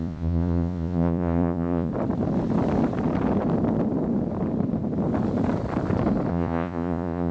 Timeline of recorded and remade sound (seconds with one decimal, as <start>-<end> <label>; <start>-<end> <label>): 0.0-1.9 remade; 1.9-6.3 recorded; 6.3-7.3 remade